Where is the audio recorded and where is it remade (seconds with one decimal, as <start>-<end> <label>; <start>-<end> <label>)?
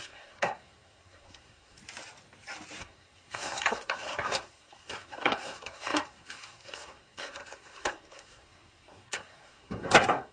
0.0-1.8 remade; 1.8-2.8 recorded; 2.8-10.3 remade